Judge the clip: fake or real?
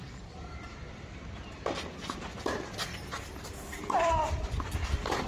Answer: fake